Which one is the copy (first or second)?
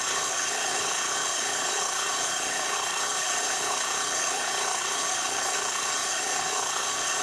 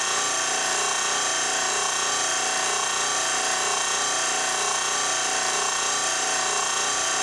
first